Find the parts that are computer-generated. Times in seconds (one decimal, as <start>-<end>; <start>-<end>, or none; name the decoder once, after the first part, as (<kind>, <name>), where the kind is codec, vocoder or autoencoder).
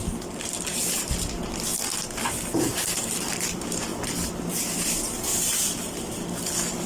none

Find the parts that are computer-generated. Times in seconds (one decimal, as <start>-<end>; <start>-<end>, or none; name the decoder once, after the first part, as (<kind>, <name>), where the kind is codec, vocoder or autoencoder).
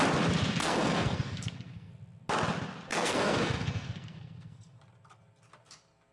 0.6-1.9 (codec, SNAC); 2.9-4.8